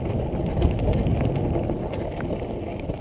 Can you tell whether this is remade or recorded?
recorded